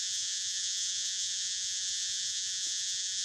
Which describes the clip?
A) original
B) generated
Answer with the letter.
B